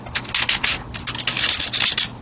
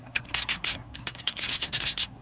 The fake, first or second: second